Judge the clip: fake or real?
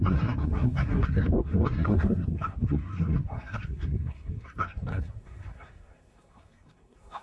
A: fake